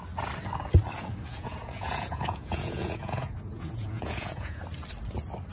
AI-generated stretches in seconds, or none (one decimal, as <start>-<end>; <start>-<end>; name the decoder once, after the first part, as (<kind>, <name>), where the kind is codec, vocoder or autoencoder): 1.3-4.6 (vocoder, Vocos)